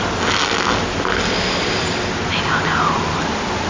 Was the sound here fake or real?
real